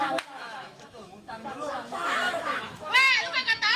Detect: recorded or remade remade